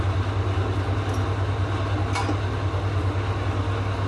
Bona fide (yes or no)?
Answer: yes